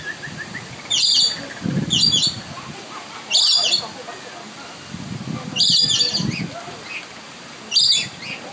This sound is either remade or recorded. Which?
recorded